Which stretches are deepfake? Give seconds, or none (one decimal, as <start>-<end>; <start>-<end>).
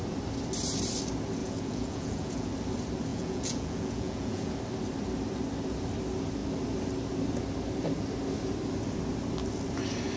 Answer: 1.4-2.5; 3.1-4.5